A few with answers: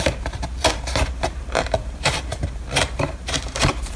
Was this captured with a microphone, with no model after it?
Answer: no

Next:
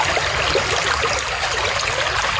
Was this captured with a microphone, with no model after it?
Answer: yes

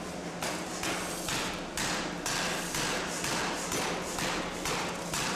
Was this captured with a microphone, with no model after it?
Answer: yes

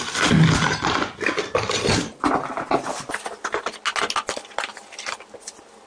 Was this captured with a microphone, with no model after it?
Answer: yes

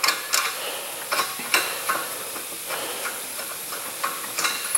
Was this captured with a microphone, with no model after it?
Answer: yes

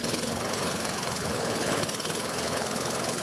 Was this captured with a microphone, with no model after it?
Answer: no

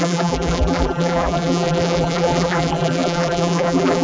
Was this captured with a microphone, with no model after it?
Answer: no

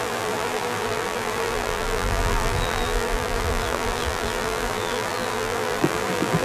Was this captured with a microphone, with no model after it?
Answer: no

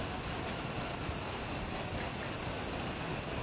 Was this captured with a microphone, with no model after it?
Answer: yes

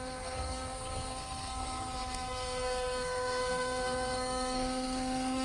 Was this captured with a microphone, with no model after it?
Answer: no